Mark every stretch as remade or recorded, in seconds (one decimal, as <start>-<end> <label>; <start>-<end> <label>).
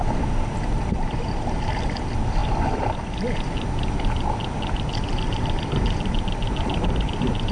0.0-7.5 recorded